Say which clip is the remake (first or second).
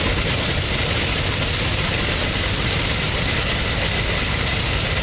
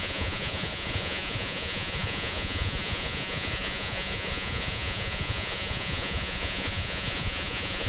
second